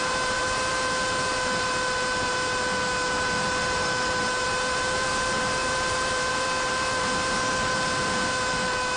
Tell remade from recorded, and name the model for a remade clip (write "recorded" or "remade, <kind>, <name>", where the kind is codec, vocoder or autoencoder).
remade, vocoder, BigVGAN v2